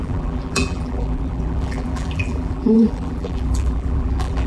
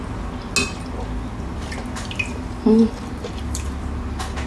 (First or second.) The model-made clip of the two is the first